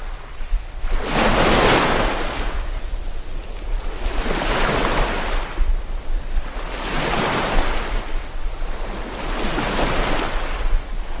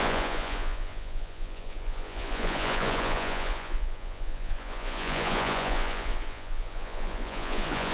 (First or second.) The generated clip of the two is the second